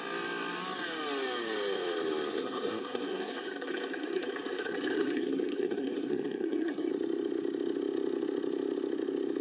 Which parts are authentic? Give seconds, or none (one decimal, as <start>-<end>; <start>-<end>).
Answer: 0.0-2.3; 6.9-9.4